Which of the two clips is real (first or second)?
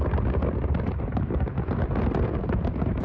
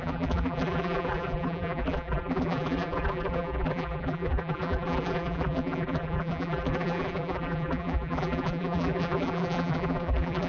first